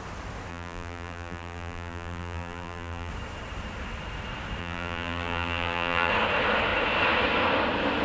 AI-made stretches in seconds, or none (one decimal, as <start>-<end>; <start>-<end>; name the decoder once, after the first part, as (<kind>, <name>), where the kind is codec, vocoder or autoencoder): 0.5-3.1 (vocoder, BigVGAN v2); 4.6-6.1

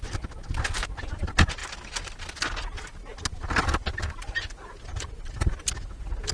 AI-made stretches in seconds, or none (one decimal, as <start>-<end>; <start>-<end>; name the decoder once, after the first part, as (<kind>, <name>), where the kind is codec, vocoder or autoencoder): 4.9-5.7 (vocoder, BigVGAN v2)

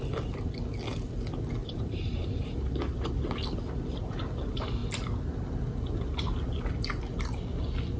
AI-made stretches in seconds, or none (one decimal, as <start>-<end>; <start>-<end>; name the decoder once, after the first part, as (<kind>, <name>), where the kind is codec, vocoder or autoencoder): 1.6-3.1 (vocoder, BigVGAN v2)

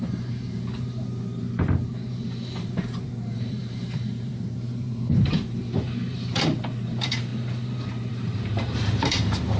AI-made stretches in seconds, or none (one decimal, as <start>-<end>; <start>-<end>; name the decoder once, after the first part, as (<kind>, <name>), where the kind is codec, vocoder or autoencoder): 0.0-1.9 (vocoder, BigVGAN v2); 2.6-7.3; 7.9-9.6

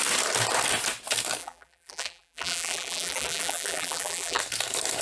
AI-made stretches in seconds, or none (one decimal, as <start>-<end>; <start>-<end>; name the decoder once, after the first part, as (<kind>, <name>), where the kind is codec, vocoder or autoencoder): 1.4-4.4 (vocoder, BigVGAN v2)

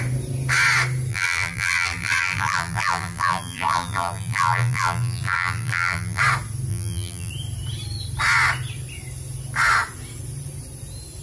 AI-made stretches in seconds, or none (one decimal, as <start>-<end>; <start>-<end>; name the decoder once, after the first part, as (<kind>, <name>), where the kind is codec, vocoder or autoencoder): 1.1-6.2 (vocoder, BigVGAN v2); 6.7-7.3

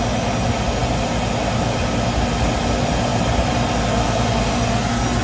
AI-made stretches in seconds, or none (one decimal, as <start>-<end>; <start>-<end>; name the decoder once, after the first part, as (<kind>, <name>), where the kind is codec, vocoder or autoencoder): 3.1-3.7 (vocoder, BigVGAN v2)